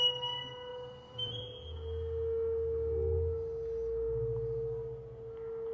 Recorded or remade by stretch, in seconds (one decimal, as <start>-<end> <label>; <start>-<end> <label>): 0.0-0.7 recorded; 0.7-1.4 remade; 1.4-5.7 recorded